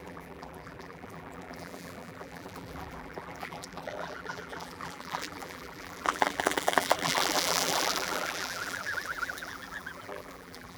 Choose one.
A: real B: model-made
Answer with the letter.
B